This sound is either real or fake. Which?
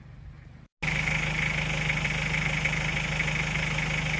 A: real